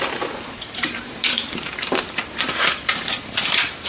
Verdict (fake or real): fake